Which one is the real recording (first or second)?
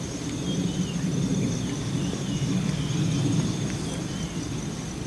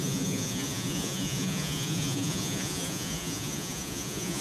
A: first